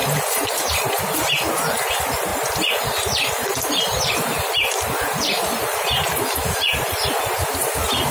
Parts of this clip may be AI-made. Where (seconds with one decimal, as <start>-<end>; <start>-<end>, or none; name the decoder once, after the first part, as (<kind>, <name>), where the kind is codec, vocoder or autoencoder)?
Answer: 0.0-1.0 (vocoder, BigVGAN v2); 2.3-7.2